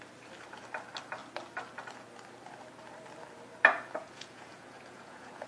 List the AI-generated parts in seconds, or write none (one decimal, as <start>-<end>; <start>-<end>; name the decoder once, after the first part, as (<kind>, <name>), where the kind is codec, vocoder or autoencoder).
4.0-5.5 (vocoder, Vocos)